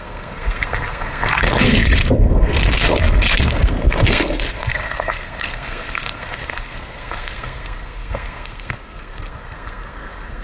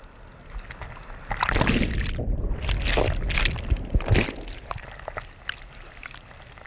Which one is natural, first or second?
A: second